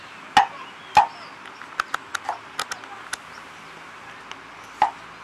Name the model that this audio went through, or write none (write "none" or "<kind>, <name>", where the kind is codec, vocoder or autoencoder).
none